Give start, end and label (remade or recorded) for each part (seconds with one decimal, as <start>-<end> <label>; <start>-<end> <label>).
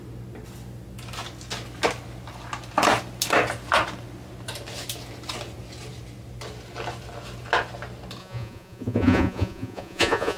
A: 0.0-8.2 recorded; 8.2-10.4 remade